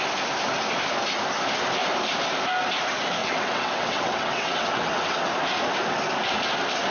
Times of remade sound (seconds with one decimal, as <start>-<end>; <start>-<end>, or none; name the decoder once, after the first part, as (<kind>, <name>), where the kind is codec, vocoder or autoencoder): 3.2-5.3 (vocoder, WaveNeXt)